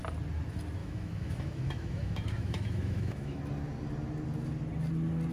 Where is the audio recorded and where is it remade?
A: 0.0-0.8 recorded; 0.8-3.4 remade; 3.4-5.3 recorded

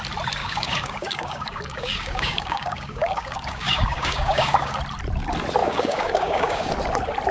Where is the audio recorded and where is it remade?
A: 0.0-0.4 recorded; 0.4-4.8 remade; 4.8-5.6 recorded; 5.6-6.7 remade; 6.7-7.3 recorded

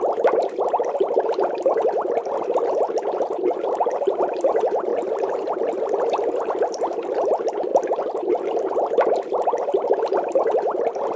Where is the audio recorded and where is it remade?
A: 0.0-11.2 remade

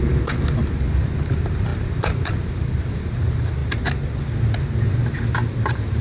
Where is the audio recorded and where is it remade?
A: 0.0-3.6 remade; 3.6-5.3 recorded; 5.3-6.0 remade

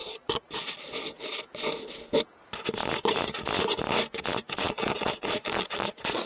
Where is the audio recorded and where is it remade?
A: 0.0-0.5 remade; 0.5-4.6 recorded; 4.6-6.3 remade

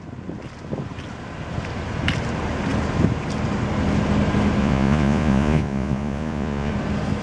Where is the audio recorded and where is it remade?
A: 0.0-4.6 recorded; 4.6-6.7 remade; 6.7-7.2 recorded